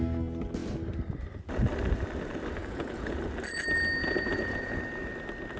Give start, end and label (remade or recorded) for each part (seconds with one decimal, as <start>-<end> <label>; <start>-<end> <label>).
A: 0.0-2.6 recorded; 2.6-3.2 remade; 3.2-4.0 recorded; 4.0-4.8 remade; 4.8-5.6 recorded